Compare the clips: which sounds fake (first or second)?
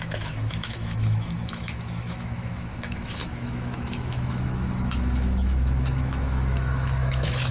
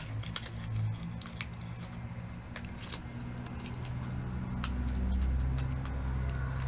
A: first